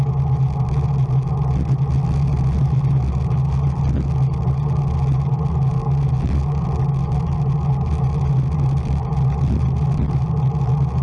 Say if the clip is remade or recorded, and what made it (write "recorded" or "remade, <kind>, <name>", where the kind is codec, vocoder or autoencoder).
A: recorded